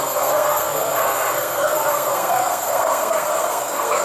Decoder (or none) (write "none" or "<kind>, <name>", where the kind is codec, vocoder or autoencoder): codec, SNAC